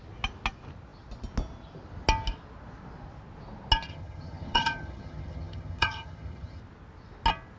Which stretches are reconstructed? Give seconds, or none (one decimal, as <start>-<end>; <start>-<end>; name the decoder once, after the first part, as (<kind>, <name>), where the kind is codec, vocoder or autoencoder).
3.9-6.6 (vocoder, HiFi-GAN)

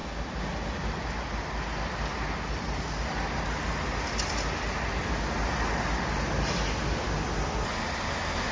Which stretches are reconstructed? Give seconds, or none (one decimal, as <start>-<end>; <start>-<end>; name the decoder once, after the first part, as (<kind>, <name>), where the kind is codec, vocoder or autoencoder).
none

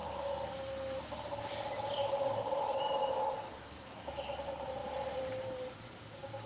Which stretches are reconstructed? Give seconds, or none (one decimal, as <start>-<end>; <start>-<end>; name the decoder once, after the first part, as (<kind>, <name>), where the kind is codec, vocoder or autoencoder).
0.0-0.5 (codec, DAC); 3.5-4.1

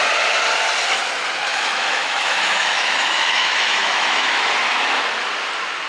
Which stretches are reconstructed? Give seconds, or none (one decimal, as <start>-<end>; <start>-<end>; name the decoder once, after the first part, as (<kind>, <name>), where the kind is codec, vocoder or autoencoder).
1.5-4.5 (autoencoder, DAC-VAE)

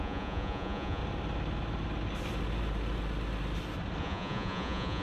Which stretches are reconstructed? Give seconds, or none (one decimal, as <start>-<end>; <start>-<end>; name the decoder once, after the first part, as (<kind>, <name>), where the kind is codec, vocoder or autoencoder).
0.0-1.0 (vocoder, Vocos); 4.0-5.0

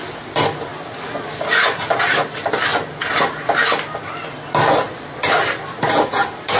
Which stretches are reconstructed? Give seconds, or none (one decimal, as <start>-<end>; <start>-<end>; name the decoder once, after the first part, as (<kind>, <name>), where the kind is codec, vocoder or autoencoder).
none

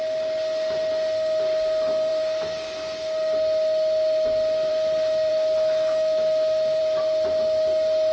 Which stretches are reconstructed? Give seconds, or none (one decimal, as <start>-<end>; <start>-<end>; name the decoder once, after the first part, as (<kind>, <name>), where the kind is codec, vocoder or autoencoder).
5.3-6.8 (autoencoder, DAC-VAE)

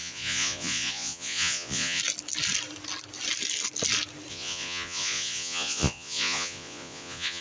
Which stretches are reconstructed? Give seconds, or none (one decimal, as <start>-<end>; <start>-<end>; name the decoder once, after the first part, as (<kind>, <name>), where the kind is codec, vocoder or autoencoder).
0.0-2.0 (vocoder, Vocos); 4.3-7.4